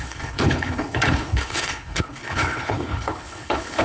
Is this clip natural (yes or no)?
no